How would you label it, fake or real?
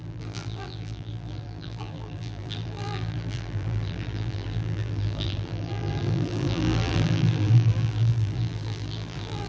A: fake